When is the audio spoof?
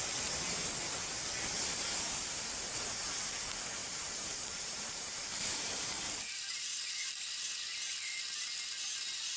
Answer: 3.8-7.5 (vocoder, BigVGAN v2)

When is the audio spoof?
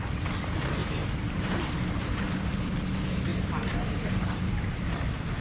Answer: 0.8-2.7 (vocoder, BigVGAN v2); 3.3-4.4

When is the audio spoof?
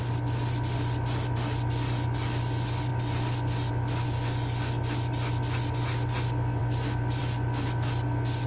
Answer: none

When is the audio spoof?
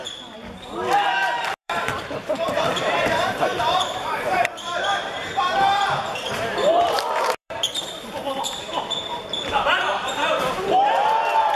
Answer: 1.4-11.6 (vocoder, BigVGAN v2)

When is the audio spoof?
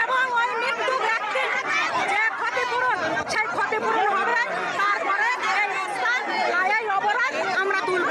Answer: 0.0-1.6 (vocoder, BigVGAN v2); 4.3-5.4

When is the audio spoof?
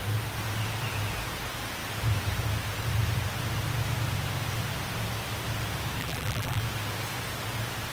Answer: 6.0-6.6 (vocoder, BigVGAN v2)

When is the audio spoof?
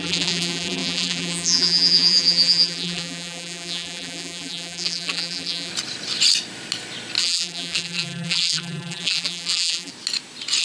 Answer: 0.0-5.7 (vocoder, BigVGAN v2); 7.2-9.9